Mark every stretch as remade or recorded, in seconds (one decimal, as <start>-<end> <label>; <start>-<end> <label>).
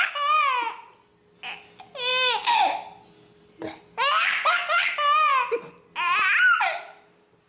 0.0-7.5 recorded